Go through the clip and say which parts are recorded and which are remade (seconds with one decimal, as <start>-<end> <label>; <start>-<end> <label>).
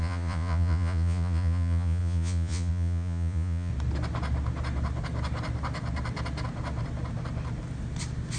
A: 0.0-3.7 remade; 3.7-8.4 recorded